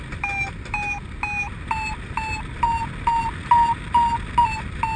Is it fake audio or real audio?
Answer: real